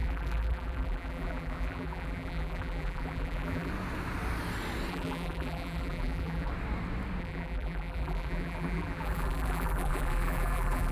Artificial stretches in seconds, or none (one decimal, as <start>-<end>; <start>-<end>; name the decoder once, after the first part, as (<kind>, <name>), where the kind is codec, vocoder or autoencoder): 0.0-3.7 (vocoder, BigVGAN v2); 4.9-6.5; 7.2-10.9